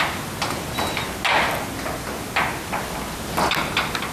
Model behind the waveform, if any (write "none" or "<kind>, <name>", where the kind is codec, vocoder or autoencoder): none